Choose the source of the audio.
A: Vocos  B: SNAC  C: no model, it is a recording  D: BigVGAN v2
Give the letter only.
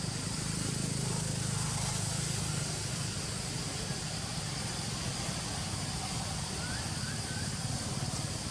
C